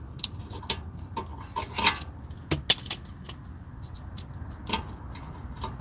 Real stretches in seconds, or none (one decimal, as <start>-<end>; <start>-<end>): 0.0-5.8